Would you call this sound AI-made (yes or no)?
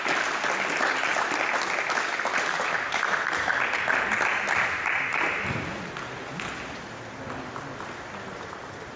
no